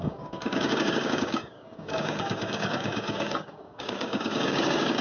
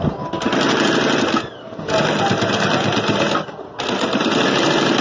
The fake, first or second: first